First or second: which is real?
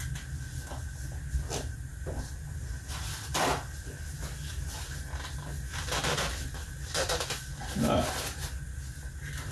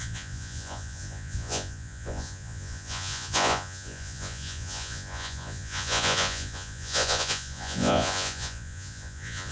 first